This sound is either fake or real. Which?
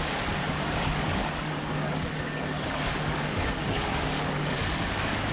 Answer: fake